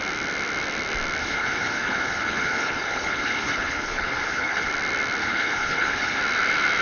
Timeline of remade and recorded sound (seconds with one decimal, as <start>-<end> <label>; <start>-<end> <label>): 0.0-1.2 recorded; 1.2-4.7 remade; 4.7-5.2 recorded; 5.2-6.2 remade; 6.2-6.8 recorded